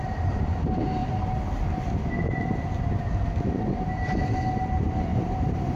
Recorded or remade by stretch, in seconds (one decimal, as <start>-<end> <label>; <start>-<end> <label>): 0.0-5.1 recorded; 5.1-5.8 remade